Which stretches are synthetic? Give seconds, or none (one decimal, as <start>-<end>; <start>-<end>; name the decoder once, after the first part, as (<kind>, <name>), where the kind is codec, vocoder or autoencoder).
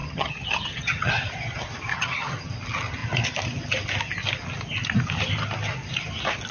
0.0-1.1 (vocoder, HiFi-GAN); 1.9-2.5